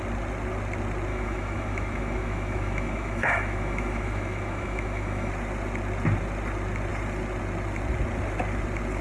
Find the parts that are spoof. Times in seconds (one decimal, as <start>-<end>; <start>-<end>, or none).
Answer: 1.1-5.3